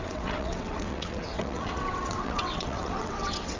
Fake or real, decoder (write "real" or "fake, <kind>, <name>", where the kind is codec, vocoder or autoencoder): fake, vocoder, WaveNeXt